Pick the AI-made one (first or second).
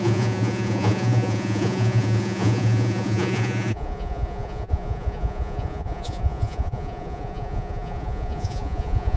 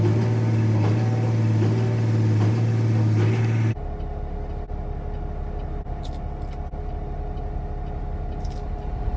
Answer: first